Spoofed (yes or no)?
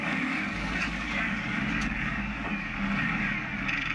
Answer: yes